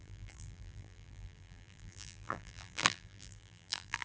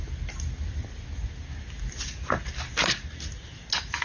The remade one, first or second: first